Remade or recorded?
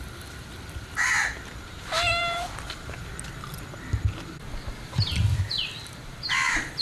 remade